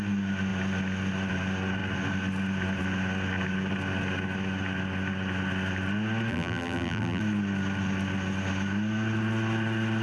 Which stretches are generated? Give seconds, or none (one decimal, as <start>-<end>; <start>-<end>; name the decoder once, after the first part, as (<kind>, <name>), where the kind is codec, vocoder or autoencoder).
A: 6.3-7.2 (vocoder, BigVGAN v2)

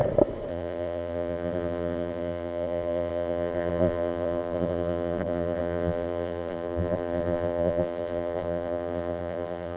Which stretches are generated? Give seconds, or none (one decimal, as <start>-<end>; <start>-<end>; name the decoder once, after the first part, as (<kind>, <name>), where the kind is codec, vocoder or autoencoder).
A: 0.5-9.8 (vocoder, BigVGAN v2)

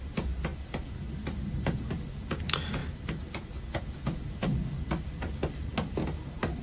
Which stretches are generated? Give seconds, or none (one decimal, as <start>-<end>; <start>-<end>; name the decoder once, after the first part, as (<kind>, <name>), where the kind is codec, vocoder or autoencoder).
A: none

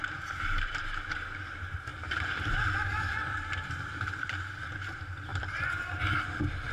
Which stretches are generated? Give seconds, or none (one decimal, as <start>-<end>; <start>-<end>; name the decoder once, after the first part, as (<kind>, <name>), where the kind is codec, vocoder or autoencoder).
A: 1.9-4.4 (vocoder, BigVGAN v2)

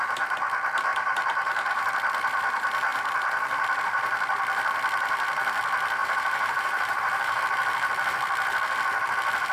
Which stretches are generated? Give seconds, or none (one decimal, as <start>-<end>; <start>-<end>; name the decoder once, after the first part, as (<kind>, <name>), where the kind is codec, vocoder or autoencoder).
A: 0.9-1.9 (vocoder, BigVGAN v2); 6.0-7.4

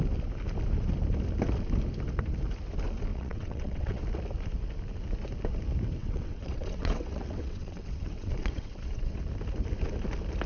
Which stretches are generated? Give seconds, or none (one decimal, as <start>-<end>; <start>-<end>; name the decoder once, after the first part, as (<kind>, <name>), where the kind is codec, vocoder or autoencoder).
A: 3.1-4.0 (vocoder, WaveNeXt); 6.0-9.2

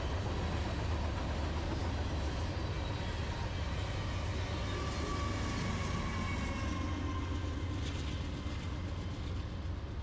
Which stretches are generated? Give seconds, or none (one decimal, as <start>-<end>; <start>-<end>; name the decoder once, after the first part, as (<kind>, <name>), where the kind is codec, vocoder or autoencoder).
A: none

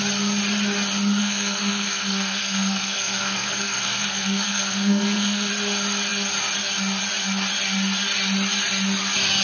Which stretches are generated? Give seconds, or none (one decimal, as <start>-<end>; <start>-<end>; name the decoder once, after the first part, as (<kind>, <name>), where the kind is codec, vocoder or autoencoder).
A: 1.2-5.5 (codec, SNAC)